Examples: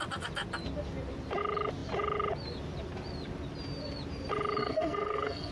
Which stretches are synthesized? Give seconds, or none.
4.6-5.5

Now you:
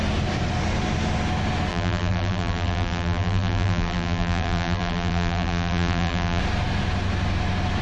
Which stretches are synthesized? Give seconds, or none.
1.7-6.4

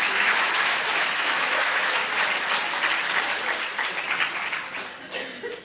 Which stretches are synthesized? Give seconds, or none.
0.0-2.0

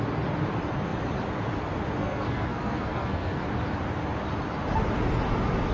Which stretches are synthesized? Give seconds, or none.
2.0-3.4

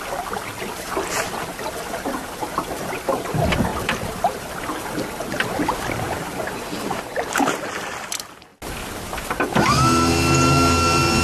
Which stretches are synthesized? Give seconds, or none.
none